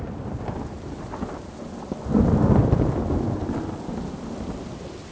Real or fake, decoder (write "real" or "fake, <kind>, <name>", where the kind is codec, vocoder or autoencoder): real